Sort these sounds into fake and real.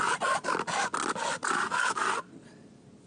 real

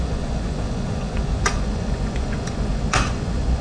fake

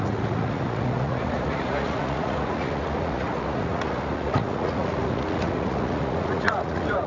fake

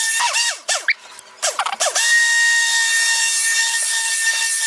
real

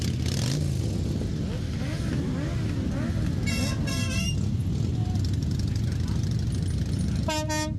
real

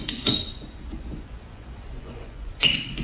fake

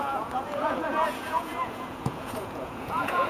fake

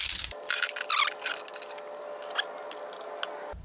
real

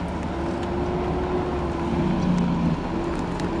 real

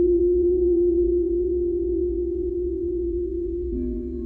fake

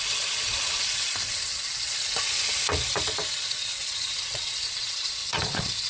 fake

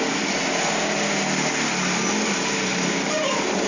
real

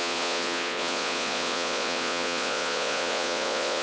fake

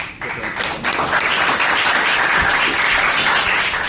real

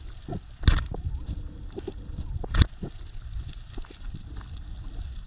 real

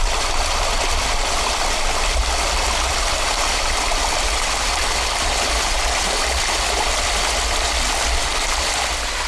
real